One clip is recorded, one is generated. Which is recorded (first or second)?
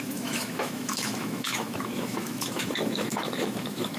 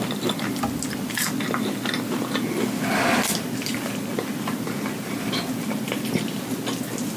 second